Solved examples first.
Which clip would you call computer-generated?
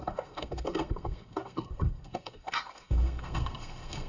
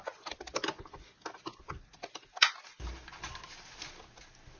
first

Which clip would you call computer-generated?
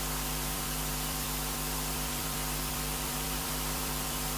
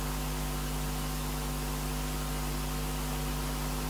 first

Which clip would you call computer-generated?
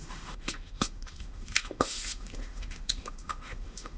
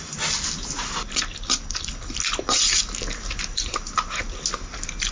first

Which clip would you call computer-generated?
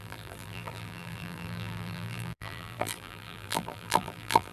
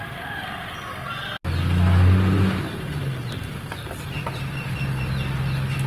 first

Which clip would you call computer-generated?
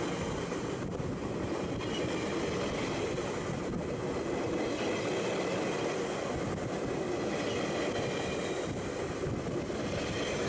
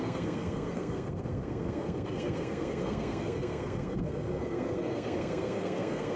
second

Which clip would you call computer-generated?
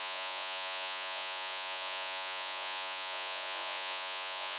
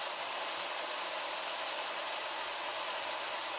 first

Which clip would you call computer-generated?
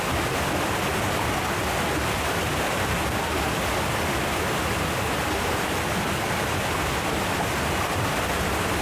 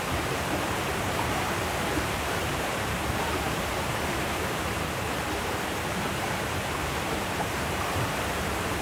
second